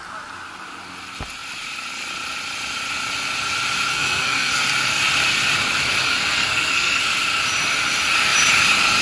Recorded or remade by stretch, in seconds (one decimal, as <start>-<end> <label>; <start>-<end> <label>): 0.0-3.9 recorded; 3.9-4.6 remade; 4.6-6.0 recorded; 6.0-7.0 remade; 7.0-9.0 recorded